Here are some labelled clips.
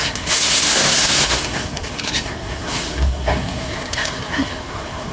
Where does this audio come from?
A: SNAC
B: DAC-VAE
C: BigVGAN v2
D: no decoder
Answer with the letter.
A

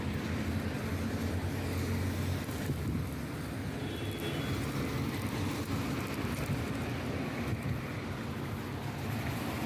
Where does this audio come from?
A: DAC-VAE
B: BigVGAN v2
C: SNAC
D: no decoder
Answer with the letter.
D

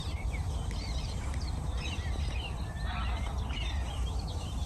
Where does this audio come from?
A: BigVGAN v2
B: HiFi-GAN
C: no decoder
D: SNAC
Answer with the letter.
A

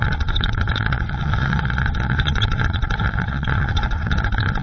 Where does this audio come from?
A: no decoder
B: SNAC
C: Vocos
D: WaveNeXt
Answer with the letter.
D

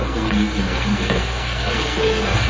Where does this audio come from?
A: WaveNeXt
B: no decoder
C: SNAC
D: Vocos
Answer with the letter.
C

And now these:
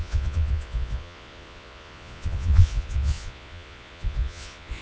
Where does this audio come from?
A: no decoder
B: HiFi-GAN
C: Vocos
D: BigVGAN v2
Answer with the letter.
C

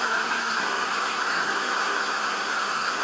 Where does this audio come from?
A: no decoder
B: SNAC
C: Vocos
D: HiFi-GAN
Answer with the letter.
B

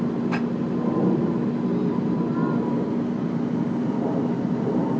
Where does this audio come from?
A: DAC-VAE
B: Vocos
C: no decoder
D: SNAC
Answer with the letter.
C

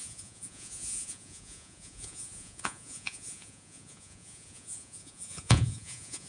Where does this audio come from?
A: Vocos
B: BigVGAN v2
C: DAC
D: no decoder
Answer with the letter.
A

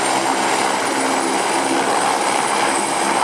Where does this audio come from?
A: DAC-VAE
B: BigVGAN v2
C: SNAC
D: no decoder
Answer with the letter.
D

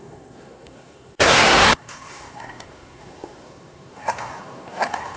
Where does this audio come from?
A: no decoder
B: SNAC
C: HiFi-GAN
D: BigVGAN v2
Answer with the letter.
B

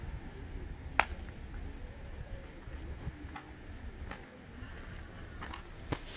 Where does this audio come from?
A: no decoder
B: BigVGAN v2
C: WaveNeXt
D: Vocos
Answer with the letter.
A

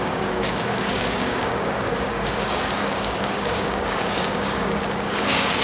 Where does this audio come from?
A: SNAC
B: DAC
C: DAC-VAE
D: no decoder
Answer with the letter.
B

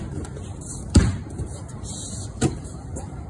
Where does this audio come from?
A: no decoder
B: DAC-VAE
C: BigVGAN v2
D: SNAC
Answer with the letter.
C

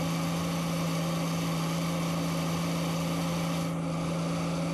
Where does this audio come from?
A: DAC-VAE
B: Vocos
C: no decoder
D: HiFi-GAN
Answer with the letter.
C